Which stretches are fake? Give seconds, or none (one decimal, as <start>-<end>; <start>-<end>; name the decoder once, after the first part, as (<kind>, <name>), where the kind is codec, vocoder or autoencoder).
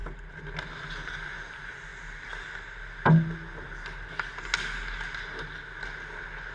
none